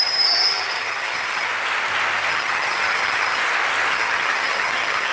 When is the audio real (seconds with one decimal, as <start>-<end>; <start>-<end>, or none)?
1.5-2.3; 3.4-3.9